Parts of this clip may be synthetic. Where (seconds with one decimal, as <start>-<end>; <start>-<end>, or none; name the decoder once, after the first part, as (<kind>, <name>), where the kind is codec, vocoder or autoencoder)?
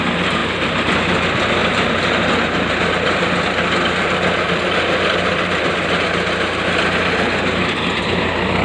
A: 0.4-1.0 (vocoder, BigVGAN v2); 1.6-6.0